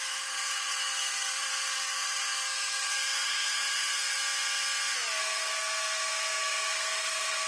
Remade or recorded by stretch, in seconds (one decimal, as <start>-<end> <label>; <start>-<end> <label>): 0.0-4.2 remade; 4.2-5.2 recorded; 5.2-7.5 remade